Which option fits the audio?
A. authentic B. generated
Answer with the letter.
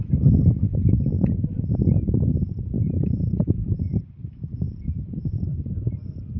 B